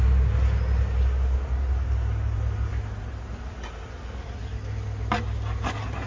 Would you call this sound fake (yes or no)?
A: no